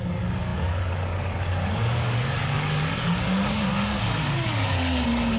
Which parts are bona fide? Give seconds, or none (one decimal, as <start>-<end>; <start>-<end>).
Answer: none